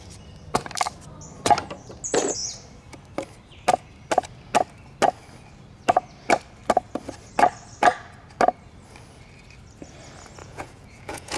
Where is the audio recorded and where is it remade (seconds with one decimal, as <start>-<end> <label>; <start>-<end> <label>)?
0.0-10.4 recorded; 10.4-11.4 remade